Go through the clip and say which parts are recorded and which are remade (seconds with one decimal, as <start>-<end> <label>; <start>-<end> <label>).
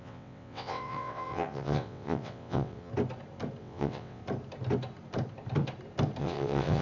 0.0-2.9 remade; 2.9-3.6 recorded; 3.6-4.2 remade; 4.2-6.2 recorded; 6.2-6.8 remade